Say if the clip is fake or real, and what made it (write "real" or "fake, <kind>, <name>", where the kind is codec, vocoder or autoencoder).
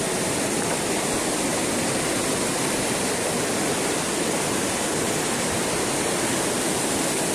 real